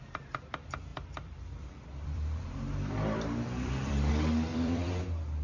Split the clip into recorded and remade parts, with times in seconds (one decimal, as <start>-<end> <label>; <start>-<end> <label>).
0.0-0.9 recorded; 0.9-4.1 remade; 4.1-4.5 recorded; 4.5-5.0 remade; 5.0-5.4 recorded

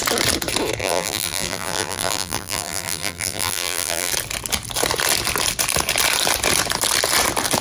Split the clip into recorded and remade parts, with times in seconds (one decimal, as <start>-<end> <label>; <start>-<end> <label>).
0.0-0.8 recorded; 0.8-4.1 remade; 4.1-7.6 recorded